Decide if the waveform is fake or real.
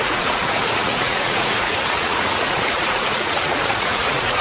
fake